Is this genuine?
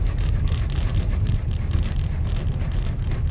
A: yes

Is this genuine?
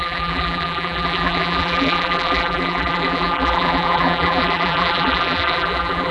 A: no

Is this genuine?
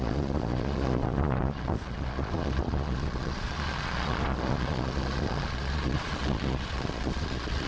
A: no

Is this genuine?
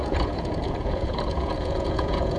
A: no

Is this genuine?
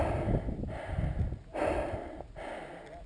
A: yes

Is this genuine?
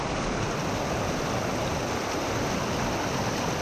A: yes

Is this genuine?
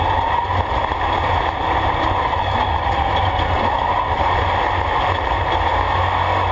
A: yes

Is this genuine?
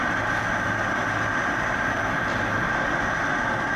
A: yes